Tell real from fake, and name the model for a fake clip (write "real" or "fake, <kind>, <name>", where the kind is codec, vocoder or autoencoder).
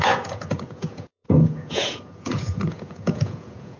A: fake, vocoder, Vocos